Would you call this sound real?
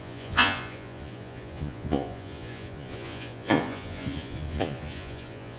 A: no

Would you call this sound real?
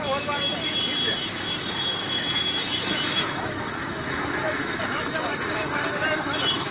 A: no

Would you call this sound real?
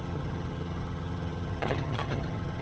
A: no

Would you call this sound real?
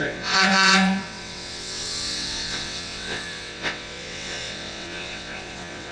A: no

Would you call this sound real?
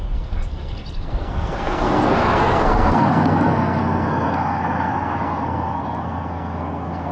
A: no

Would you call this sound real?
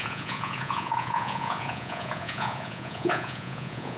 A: no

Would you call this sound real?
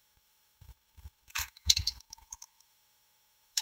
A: no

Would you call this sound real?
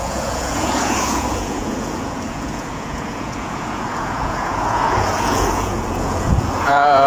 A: no